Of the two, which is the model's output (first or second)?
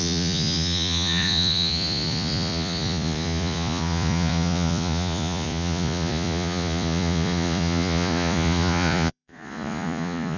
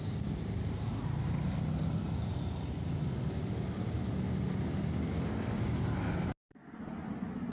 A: first